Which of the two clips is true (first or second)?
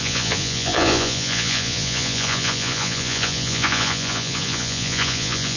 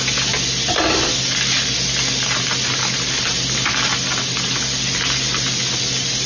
second